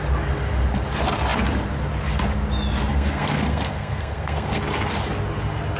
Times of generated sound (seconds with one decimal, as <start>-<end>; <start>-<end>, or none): 2.9-4.6